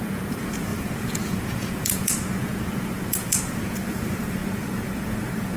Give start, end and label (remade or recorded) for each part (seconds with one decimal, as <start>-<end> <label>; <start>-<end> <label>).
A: 0.0-5.6 remade